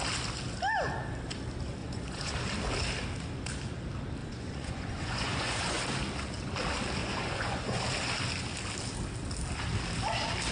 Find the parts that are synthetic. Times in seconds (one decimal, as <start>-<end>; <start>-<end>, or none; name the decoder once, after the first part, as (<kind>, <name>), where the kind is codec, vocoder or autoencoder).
1.8-2.3 (vocoder, Vocos); 4.2-5.8; 7.0-7.8